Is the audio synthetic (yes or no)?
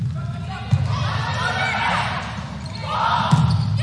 no